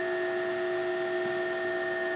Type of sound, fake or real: real